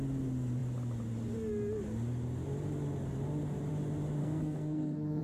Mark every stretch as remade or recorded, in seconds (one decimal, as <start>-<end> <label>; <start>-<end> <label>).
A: 0.0-4.2 recorded; 4.2-5.2 remade